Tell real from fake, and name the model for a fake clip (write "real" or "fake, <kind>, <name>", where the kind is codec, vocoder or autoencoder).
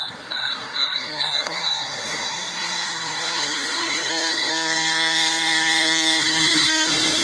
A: fake, codec, SNAC